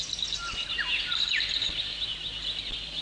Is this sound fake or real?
real